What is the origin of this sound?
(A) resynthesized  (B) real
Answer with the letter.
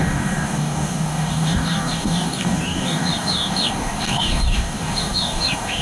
A